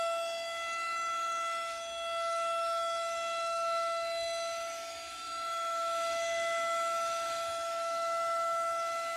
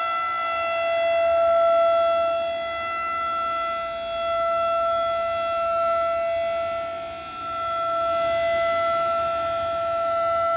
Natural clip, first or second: second